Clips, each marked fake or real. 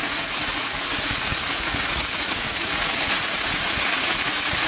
fake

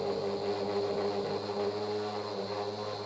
real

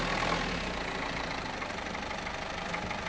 real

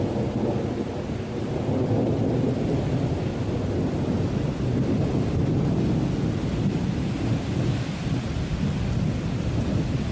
real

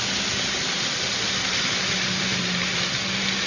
real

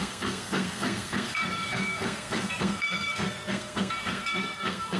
fake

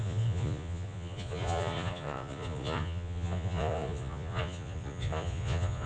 fake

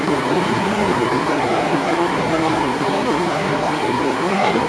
fake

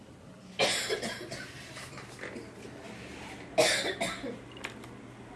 real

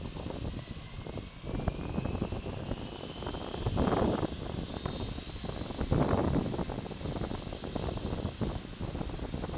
real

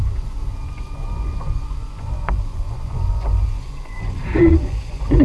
fake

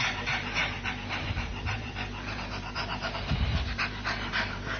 fake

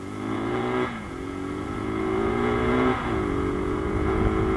fake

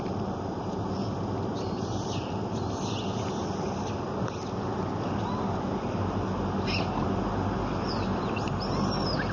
real